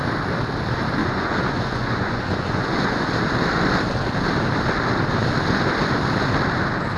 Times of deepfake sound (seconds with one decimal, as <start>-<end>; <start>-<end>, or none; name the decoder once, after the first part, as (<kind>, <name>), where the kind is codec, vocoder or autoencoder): 1.0-3.1 (vocoder, Vocos)